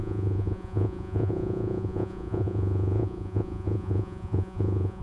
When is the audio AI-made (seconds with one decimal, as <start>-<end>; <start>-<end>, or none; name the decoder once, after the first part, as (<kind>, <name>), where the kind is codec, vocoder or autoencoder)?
0.0-5.0 (vocoder, Vocos)